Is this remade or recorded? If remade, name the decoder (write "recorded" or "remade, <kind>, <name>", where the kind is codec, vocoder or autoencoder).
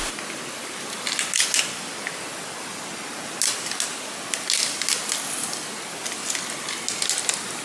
recorded